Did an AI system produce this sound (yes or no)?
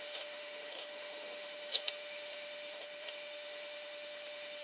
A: yes